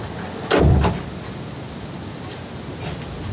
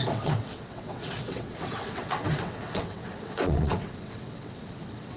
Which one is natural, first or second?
first